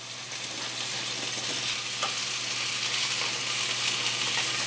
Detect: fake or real real